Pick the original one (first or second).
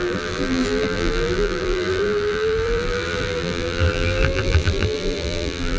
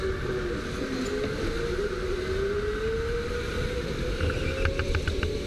second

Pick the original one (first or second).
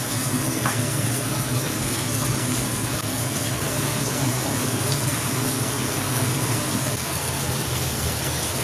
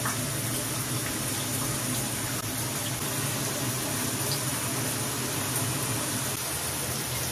second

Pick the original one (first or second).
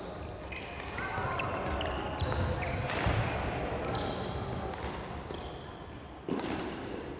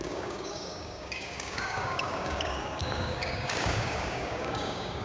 first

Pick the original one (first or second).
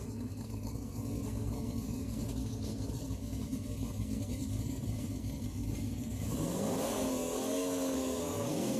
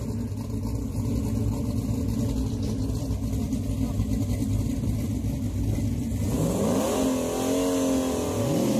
second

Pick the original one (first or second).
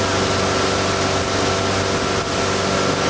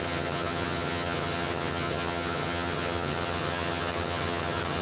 first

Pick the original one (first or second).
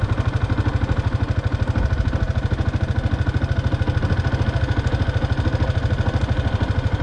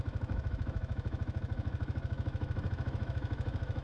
first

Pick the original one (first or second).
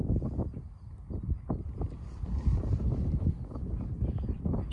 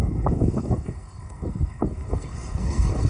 first